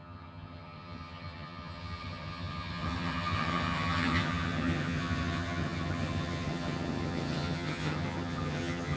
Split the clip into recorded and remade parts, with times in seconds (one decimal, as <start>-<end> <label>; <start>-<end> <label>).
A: 0.0-9.0 remade